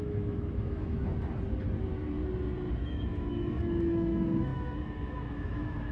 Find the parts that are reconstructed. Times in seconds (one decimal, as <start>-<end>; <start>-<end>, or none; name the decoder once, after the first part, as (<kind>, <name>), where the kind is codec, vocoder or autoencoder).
0.0-1.1 (autoencoder, DAC-VAE); 2.7-5.9